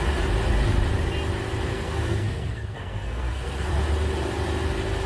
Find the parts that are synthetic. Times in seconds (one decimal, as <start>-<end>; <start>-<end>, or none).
1.7-3.7